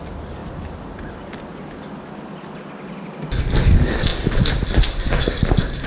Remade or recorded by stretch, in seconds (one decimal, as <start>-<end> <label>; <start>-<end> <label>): 0.0-5.9 recorded